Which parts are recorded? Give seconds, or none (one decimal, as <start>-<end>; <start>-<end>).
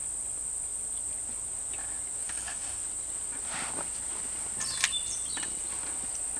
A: 0.0-2.2; 2.8-6.4